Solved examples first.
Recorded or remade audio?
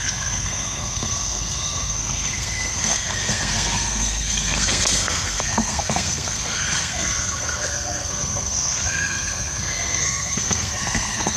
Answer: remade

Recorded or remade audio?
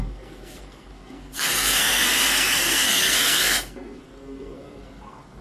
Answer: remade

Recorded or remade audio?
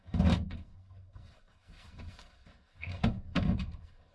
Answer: remade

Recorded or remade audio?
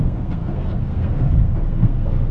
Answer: remade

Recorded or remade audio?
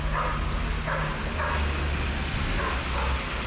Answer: recorded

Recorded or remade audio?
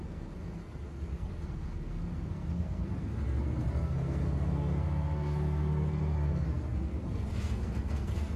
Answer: remade